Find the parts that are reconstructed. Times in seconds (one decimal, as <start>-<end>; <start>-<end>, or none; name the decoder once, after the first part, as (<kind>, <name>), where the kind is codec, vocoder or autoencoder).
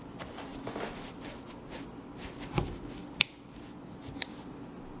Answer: none